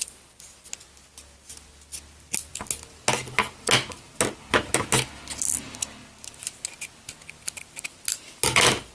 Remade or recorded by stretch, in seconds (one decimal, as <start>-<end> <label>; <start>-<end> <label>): 0.0-8.9 recorded